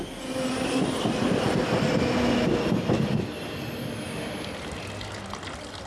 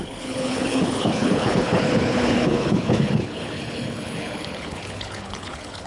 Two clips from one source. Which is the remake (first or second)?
second